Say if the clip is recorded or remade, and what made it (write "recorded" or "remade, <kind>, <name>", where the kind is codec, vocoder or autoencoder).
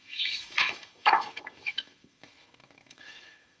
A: remade, autoencoder, DAC-VAE